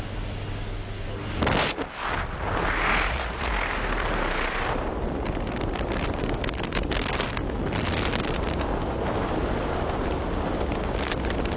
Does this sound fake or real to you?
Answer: real